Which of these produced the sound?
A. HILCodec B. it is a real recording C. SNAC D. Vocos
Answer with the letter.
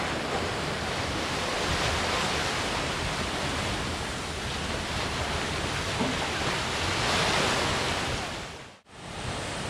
B